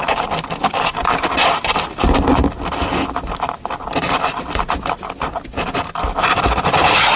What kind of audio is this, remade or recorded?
recorded